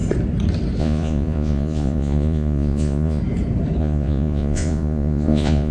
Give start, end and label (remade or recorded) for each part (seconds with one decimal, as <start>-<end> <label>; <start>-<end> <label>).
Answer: 0.0-0.8 recorded; 0.8-3.2 remade; 3.2-3.8 recorded; 3.8-5.7 remade

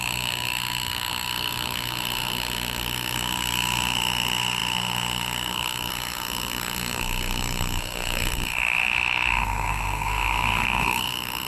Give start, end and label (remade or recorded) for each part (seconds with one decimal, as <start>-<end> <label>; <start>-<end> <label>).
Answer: 0.0-11.5 remade

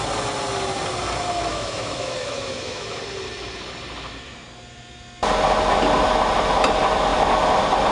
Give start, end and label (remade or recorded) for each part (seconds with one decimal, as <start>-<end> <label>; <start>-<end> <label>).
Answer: 0.0-1.5 recorded; 1.5-3.0 remade; 3.0-7.9 recorded

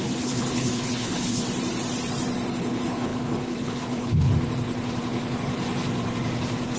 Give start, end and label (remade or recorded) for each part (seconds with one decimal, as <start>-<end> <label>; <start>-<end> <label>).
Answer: 0.0-1.4 remade; 1.4-2.5 recorded; 2.5-4.3 remade; 4.3-6.8 recorded

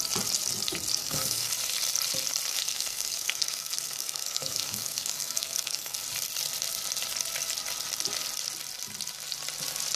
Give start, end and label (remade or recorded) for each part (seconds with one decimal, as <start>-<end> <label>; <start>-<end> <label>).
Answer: 0.0-1.0 recorded; 1.0-1.5 remade; 1.5-2.5 recorded; 2.5-6.0 remade; 6.0-10.0 recorded